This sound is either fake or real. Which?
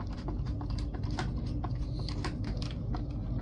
real